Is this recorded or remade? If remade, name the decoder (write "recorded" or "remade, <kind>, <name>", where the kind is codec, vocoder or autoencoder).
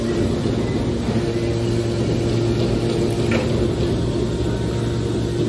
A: recorded